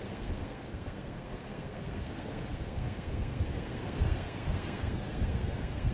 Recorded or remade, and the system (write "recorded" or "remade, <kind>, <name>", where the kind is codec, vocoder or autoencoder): remade, codec, SNAC